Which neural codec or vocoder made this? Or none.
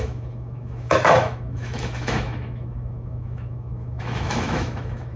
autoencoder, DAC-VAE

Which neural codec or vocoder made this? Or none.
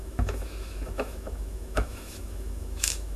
autoencoder, DAC-VAE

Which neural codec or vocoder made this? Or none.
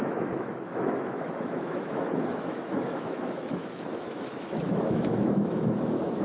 autoencoder, DAC-VAE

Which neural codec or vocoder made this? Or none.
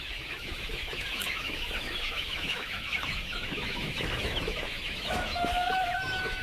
autoencoder, DAC-VAE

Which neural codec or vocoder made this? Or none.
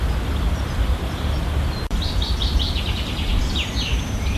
none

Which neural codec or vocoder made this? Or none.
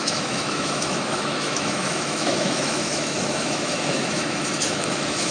autoencoder, DAC-VAE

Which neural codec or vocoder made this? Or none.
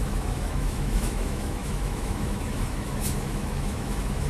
autoencoder, DAC-VAE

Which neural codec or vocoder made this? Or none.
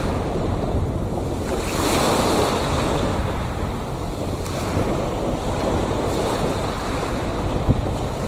none